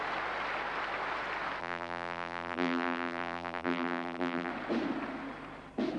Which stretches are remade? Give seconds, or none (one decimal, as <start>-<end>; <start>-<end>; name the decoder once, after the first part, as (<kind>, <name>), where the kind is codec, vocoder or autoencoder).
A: 1.6-4.5 (vocoder, BigVGAN v2)